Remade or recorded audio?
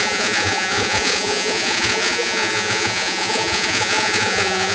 remade